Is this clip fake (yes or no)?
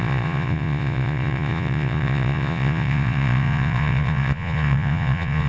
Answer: yes